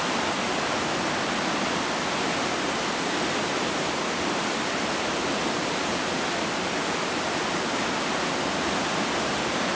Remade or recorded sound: recorded